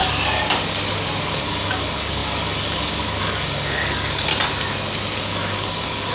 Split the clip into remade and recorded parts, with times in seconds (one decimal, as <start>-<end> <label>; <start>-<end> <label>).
0.0-1.4 recorded; 1.4-4.3 remade; 4.3-5.2 recorded; 5.2-6.1 remade